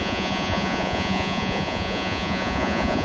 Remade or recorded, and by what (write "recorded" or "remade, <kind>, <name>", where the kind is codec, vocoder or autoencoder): remade, vocoder, Vocos